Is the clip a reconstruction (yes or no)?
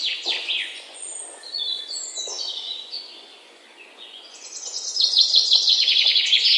yes